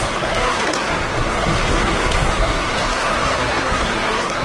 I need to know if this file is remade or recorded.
remade